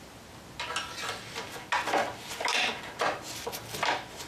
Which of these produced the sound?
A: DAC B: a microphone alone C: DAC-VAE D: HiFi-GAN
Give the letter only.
B